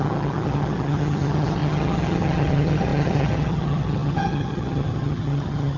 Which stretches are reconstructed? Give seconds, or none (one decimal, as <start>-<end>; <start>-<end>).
0.0-5.8